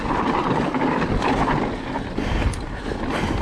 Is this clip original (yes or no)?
yes